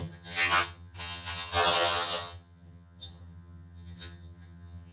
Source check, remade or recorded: remade